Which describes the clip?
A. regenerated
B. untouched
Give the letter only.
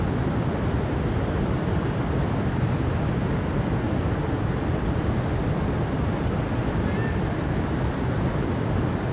B